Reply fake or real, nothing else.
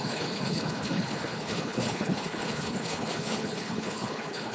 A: fake